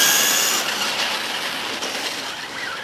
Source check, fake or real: real